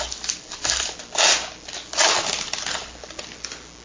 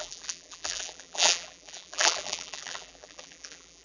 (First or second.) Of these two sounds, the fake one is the second